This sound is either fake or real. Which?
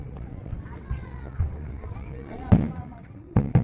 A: fake